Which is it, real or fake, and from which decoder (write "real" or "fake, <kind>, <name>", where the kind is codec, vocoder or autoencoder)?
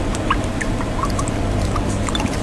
fake, vocoder, BigVGAN v2